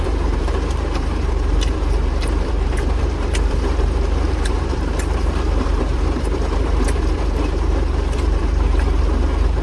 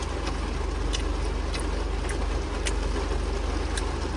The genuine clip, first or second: second